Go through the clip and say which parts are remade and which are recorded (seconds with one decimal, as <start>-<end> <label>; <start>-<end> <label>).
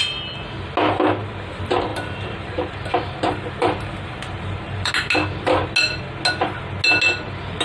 0.0-1.9 recorded; 1.9-4.9 remade; 4.9-7.6 recorded